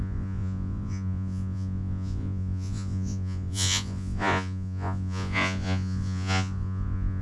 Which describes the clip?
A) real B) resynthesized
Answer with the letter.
B